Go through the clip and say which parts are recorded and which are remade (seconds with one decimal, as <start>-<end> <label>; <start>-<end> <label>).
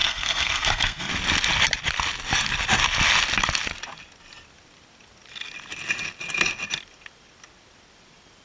0.0-1.1 remade; 1.1-8.4 recorded